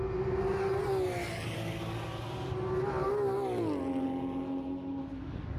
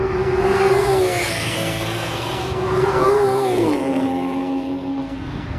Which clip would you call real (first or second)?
first